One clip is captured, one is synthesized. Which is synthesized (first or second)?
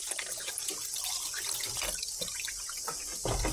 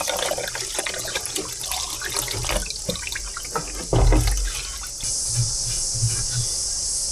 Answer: first